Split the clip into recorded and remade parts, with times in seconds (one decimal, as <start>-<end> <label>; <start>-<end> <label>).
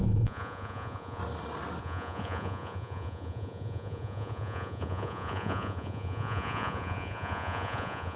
0.0-1.2 remade; 1.2-1.8 recorded; 1.8-8.2 remade